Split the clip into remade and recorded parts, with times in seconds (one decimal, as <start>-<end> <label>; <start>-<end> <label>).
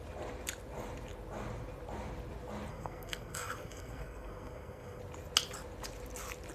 0.0-2.7 recorded; 2.7-5.0 remade; 5.0-6.5 recorded